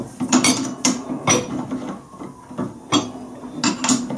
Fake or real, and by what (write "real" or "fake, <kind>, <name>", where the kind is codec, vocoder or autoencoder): real